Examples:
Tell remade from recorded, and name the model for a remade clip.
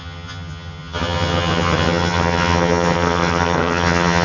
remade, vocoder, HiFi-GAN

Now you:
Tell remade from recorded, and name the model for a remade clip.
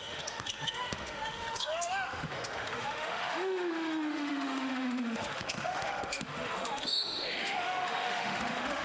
remade, autoencoder, DAC-VAE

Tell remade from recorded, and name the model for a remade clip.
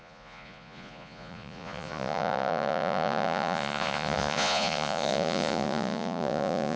remade, vocoder, Vocos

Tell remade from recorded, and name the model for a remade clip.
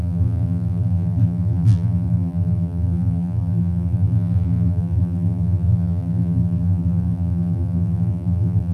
remade, vocoder, BigVGAN v2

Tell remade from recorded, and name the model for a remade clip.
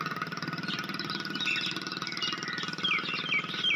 recorded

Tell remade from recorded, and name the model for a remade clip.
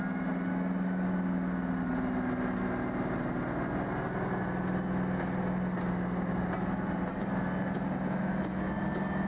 recorded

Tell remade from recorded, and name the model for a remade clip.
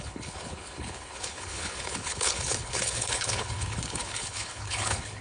remade, codec, HILCodec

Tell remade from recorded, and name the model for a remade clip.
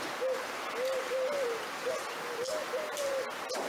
recorded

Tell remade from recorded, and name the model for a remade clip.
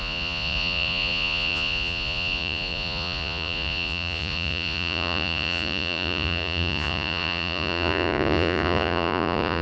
remade, vocoder, Vocos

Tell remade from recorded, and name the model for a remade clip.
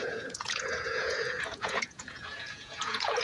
remade, vocoder, Vocos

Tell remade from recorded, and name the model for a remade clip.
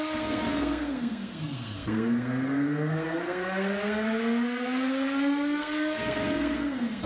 remade, codec, SNAC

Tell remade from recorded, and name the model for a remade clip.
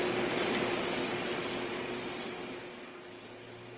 recorded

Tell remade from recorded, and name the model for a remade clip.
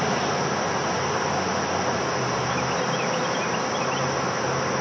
recorded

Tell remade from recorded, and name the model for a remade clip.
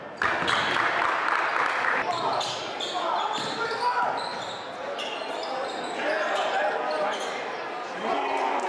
recorded